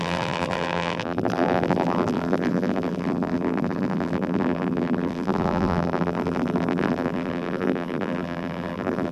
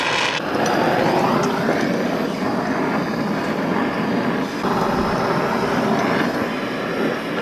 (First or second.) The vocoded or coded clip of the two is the first